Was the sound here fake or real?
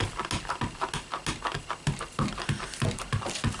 real